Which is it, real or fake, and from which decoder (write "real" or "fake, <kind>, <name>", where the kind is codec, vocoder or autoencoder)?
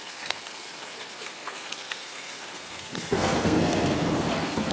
fake, codec, SNAC